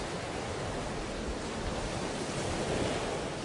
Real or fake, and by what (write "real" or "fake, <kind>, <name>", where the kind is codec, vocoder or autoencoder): real